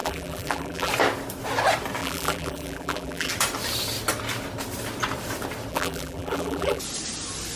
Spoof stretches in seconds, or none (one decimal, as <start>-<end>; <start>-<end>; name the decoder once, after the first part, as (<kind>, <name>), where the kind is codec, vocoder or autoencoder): 0.0-0.9 (vocoder, BigVGAN v2); 2.0-3.3; 5.7-6.8

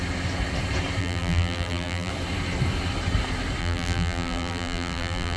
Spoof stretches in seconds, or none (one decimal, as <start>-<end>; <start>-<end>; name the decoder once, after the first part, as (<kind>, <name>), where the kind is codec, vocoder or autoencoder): 1.0-2.1 (vocoder, BigVGAN v2); 3.6-5.4

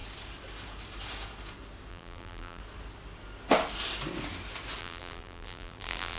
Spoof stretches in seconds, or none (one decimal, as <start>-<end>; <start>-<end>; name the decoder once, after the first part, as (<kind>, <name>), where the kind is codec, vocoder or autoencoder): 1.9-2.6 (vocoder, BigVGAN v2); 4.8-6.2

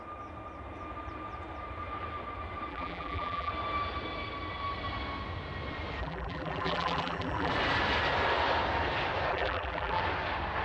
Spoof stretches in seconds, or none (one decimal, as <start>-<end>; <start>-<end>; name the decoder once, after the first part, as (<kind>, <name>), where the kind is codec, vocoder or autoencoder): 2.7-3.5 (vocoder, BigVGAN v2); 6.0-7.5; 9.3-10.0

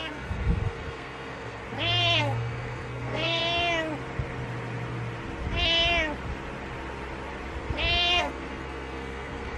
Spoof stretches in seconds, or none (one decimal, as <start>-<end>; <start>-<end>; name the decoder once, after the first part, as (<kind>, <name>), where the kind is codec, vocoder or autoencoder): 0.0-1.6 (codec, SNAC); 2.2-3.4; 8.2-9.6